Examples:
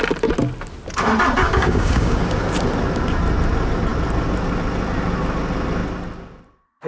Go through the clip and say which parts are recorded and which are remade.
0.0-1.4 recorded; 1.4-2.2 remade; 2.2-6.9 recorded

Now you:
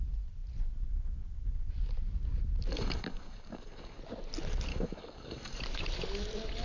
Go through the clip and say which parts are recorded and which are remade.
0.0-2.7 recorded; 2.7-4.0 remade; 4.0-4.7 recorded; 4.7-5.6 remade; 5.6-6.6 recorded

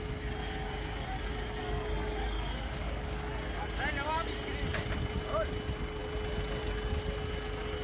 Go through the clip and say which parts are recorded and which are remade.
0.0-1.6 recorded; 1.6-3.3 remade; 3.3-7.8 recorded

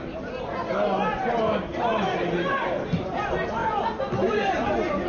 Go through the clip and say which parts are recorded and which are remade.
0.0-5.1 recorded